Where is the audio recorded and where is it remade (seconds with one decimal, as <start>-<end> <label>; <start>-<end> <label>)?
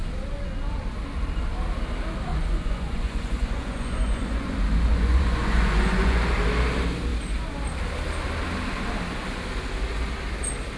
0.0-2.3 recorded; 2.3-4.5 remade; 4.5-4.9 recorded; 4.9-6.2 remade; 6.2-10.8 recorded